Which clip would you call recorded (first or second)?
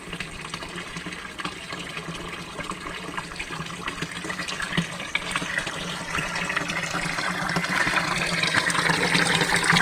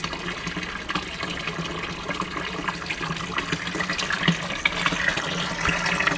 second